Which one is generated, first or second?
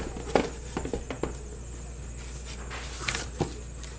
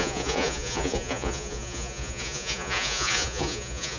second